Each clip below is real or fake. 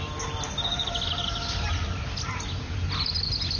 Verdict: real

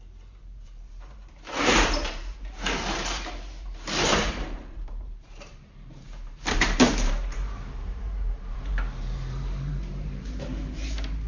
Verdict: fake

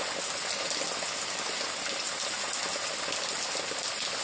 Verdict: real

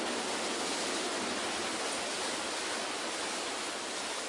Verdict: real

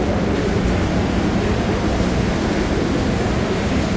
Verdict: real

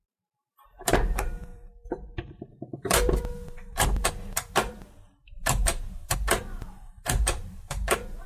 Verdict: fake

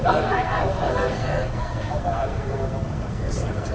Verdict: fake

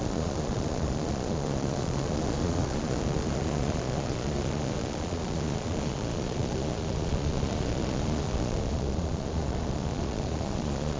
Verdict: fake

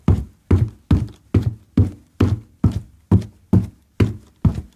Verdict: real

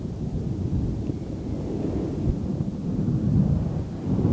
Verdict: real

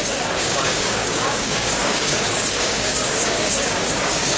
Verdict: fake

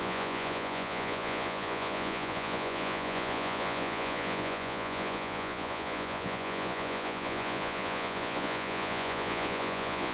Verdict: fake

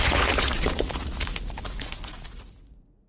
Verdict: fake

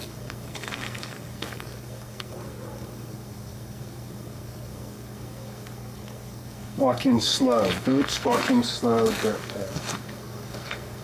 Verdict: fake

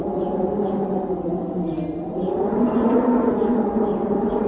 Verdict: fake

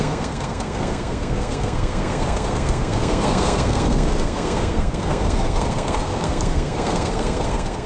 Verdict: fake